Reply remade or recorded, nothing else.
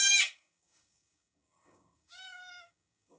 remade